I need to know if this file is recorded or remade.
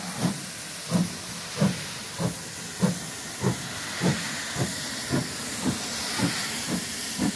recorded